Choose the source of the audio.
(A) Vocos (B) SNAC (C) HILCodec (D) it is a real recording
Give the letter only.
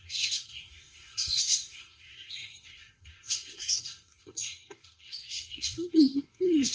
B